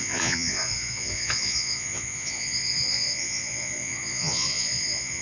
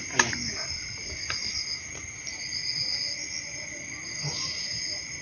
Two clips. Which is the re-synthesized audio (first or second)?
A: first